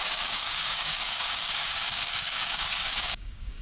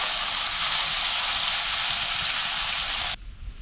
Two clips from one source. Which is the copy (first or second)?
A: first